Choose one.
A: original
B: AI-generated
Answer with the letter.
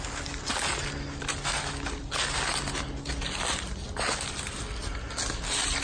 A